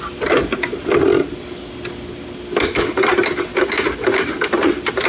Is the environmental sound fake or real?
real